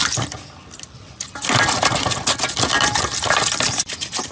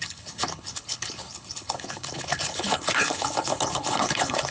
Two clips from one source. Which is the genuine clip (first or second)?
first